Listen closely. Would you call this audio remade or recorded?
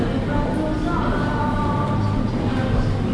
recorded